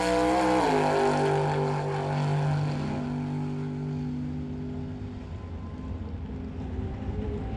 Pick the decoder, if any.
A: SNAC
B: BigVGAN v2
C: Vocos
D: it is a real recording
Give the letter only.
D